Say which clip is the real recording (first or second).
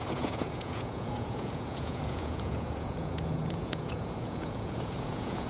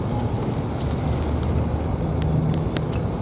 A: second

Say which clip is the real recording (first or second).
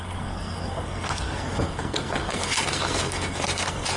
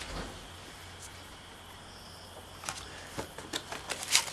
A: second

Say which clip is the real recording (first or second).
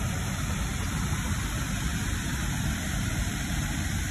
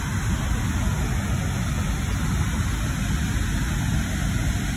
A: second